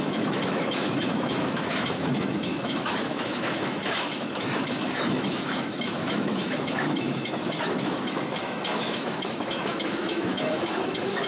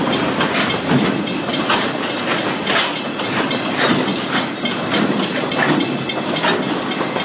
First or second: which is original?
second